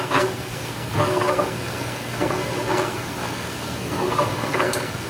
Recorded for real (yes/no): no